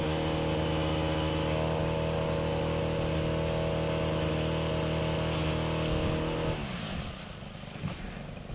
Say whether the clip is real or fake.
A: real